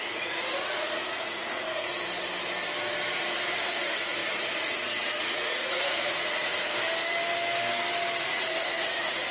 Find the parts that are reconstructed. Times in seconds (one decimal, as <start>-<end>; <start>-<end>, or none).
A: 0.0-1.9; 3.2-6.6; 8.2-9.3